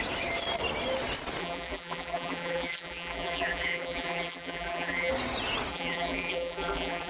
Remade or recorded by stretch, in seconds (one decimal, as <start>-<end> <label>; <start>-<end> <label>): 0.0-1.4 recorded; 1.4-5.1 remade; 5.1-5.7 recorded; 5.7-7.1 remade